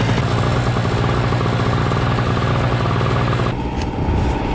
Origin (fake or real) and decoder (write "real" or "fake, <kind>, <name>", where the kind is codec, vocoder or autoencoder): real